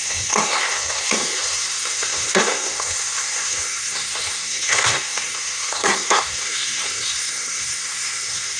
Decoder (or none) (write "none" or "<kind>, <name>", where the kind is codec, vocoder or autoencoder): codec, SNAC